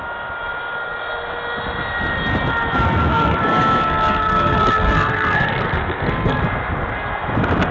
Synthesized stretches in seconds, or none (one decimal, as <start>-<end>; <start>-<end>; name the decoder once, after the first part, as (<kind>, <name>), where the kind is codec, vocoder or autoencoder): 3.1-6.4 (codec, SNAC)